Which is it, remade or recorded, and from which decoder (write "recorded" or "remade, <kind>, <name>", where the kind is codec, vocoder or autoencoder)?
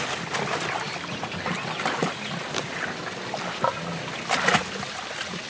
recorded